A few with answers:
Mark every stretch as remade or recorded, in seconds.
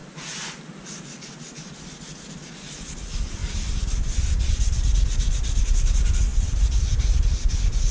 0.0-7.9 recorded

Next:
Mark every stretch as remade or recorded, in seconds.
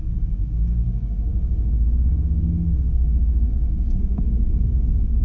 0.0-5.2 remade